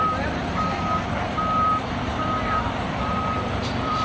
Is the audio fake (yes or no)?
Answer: yes